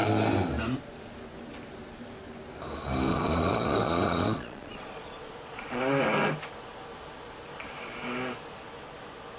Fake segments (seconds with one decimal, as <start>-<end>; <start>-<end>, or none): 3.1-5.8